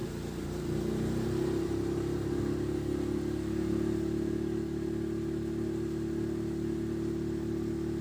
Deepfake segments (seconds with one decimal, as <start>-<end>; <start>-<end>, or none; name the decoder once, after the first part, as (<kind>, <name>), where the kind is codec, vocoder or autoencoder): 0.0-2.4 (vocoder, BigVGAN v2)